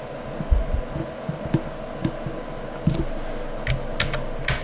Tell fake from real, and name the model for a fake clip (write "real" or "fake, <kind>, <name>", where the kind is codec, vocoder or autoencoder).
real